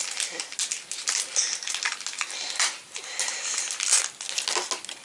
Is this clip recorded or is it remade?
recorded